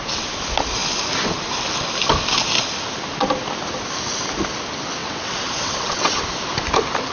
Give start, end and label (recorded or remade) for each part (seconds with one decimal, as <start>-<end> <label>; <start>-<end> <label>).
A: 0.0-5.0 recorded; 5.0-6.2 remade; 6.2-7.1 recorded